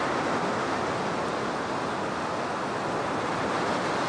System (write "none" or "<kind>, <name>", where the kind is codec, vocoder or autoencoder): none